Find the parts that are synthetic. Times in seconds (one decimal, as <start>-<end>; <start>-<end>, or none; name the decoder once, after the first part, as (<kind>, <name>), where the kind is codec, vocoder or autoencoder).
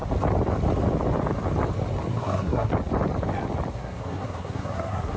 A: 2.1-2.7 (codec, SNAC); 3.7-5.2